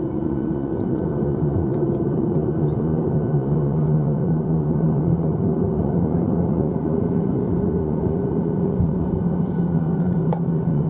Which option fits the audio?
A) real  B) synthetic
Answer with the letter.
B